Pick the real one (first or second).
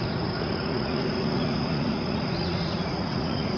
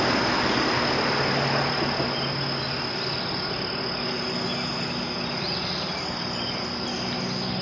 second